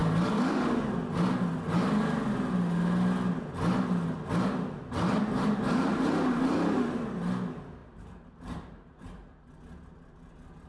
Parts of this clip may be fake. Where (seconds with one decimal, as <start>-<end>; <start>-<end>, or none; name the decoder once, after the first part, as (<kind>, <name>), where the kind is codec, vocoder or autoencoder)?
7.8-9.1 (vocoder, BigVGAN v2)